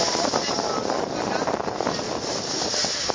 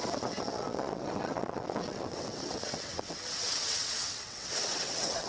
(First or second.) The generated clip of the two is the second